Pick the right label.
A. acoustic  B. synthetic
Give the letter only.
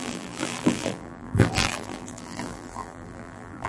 B